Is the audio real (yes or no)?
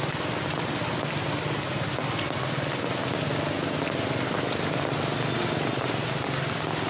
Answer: yes